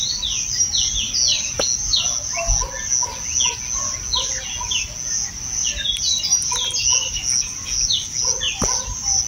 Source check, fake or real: real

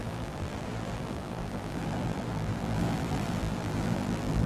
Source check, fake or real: fake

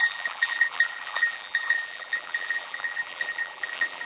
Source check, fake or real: fake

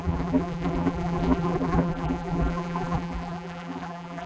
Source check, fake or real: fake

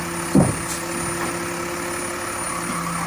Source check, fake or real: real